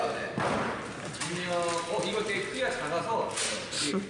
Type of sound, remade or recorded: recorded